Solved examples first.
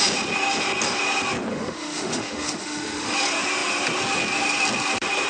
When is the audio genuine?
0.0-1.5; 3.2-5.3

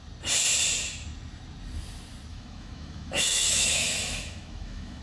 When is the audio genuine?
0.0-2.3

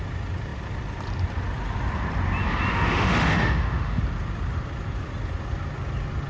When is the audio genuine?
0.0-2.7; 4.0-6.3

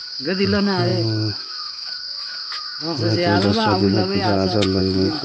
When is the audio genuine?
none

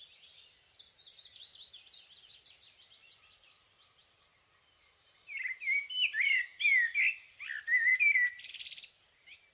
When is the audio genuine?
0.0-9.5

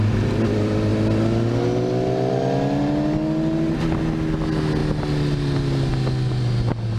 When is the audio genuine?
0.0-7.0

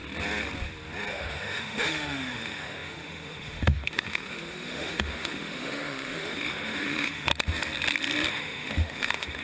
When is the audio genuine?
0.0-1.1; 7.3-8.3